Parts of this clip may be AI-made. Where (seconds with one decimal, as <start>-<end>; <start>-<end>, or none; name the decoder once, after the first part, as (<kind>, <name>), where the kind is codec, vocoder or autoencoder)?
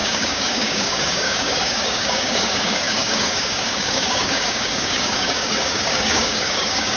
0.0-7.0 (codec, DAC)